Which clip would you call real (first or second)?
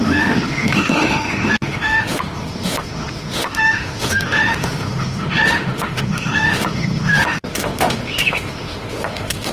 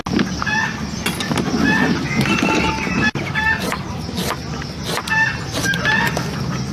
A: second